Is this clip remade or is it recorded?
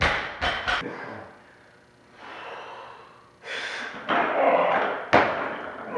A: recorded